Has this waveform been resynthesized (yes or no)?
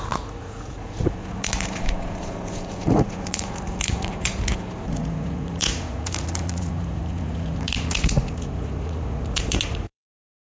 yes